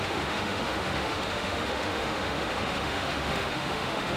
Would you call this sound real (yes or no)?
no